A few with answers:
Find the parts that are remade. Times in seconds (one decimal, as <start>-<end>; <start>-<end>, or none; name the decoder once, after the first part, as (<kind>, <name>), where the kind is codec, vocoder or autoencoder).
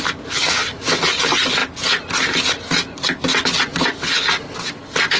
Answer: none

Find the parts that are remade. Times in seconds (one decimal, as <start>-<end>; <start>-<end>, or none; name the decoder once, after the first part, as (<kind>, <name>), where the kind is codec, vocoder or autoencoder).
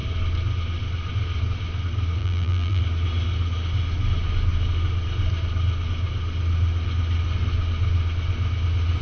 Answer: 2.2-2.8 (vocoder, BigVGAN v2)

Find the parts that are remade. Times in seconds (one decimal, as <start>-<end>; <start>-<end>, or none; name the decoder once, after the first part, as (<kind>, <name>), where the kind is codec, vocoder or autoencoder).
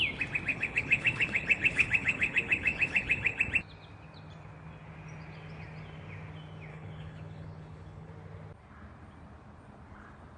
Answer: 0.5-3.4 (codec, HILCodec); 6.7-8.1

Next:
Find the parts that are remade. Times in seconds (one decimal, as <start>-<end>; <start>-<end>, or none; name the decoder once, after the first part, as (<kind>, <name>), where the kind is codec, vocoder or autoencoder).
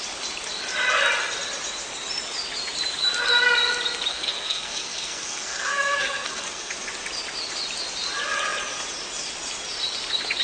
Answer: 4.1-6.7 (codec, SNAC)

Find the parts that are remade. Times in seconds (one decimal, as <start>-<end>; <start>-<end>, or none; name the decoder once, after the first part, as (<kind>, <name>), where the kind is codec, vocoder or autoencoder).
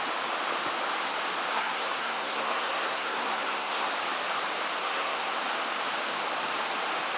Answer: 1.5-3.9 (codec, SNAC); 4.8-5.4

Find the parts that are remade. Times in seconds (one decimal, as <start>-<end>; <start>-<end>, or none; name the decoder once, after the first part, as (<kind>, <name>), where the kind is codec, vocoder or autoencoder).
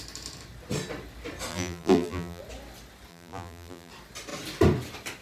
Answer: 1.5-2.4 (vocoder, BigVGAN v2); 3.1-3.9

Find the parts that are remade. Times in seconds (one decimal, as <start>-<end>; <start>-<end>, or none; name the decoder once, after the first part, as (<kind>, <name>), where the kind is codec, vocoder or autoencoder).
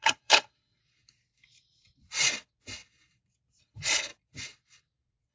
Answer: 0.0-0.8 (codec, HILCodec); 3.6-4.1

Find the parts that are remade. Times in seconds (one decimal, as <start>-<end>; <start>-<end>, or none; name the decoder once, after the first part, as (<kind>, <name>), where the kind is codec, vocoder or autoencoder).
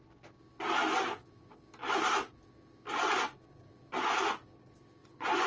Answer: 5.0-5.5 (vocoder, Vocos)